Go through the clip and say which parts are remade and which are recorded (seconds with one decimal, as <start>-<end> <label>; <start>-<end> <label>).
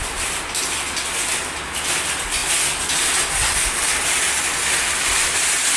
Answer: 0.0-5.8 recorded